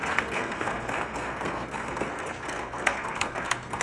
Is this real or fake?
fake